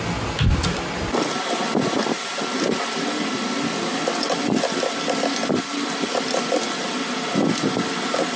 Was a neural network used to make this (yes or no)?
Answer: no